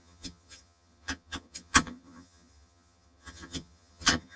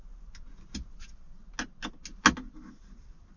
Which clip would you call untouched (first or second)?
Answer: second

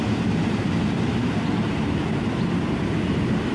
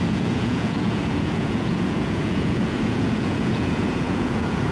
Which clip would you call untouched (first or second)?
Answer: first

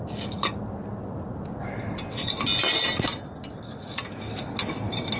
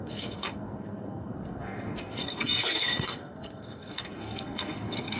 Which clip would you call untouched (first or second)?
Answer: first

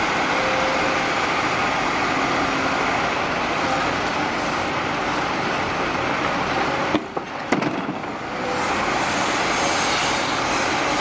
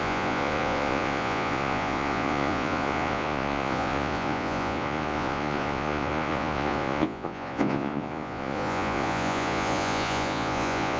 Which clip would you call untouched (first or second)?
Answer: first